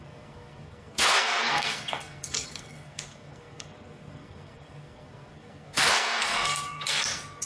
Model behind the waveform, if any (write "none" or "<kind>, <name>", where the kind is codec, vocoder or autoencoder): codec, SNAC